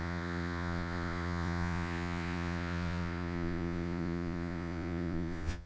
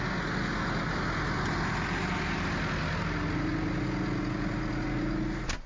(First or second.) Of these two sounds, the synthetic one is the first